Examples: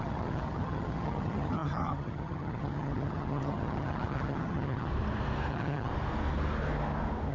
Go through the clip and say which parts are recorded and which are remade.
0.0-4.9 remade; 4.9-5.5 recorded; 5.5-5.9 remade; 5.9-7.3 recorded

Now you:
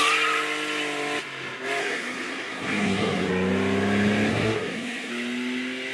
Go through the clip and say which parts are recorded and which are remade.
0.0-1.8 recorded; 1.8-3.3 remade; 3.3-4.3 recorded; 4.3-5.1 remade; 5.1-5.9 recorded